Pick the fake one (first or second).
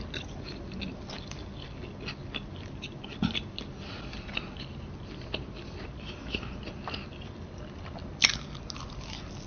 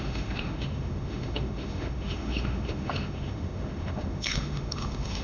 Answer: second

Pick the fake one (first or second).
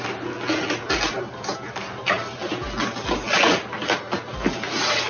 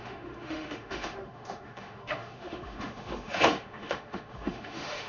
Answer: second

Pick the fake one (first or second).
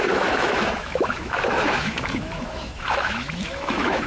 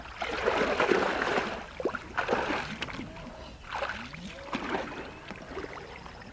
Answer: first